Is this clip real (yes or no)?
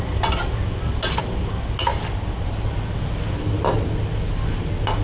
yes